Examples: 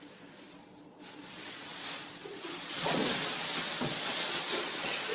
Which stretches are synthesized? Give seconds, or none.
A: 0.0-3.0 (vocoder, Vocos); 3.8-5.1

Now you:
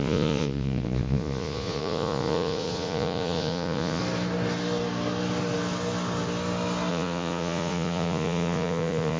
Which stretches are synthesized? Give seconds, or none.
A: 0.0-4.0 (vocoder, Vocos); 6.9-9.2

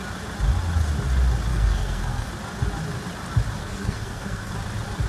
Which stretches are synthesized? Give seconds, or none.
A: 1.5-2.3 (codec, SNAC); 3.6-4.5

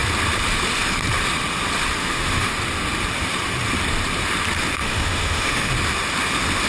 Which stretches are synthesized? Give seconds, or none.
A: 2.0-2.5 (autoencoder, DAC-VAE); 4.8-5.7

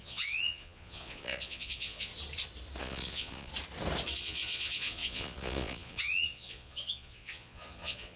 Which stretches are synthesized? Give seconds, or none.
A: 0.0-2.1 (vocoder, Vocos); 2.8-3.5; 4.2-8.2

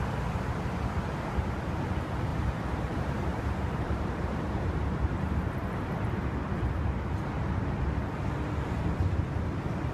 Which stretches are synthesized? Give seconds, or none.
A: 2.3-5.4 (vocoder, BigVGAN v2)

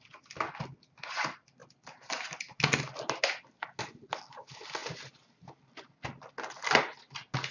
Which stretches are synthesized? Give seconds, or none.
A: none